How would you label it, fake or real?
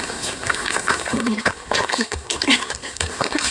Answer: fake